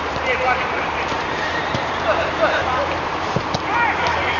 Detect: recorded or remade remade